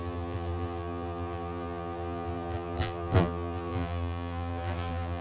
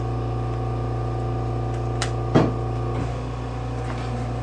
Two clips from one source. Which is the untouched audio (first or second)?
second